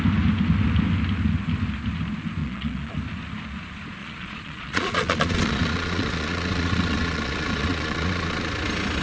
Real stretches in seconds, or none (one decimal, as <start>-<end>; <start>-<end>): 0.0-2.4; 2.9-4.0; 8.5-9.0